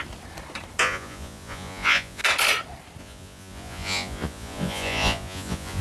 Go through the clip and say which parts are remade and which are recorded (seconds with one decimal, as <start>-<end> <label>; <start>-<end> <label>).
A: 0.0-0.8 recorded; 0.8-2.2 remade; 2.2-3.0 recorded; 3.0-5.8 remade